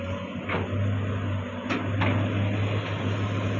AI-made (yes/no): no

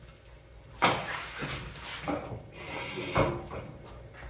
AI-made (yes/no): no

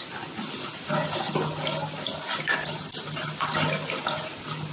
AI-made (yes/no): no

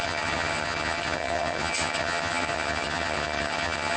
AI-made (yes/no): yes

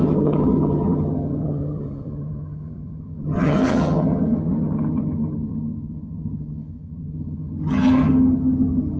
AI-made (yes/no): yes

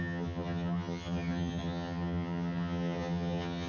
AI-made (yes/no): yes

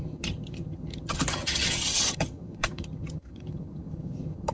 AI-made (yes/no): yes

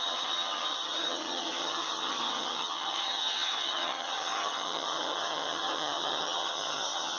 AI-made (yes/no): yes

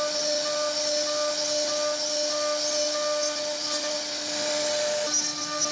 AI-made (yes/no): no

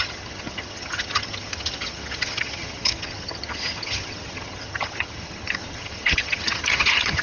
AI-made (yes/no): yes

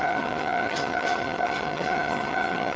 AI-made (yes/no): yes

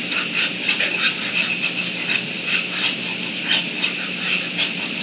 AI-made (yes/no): no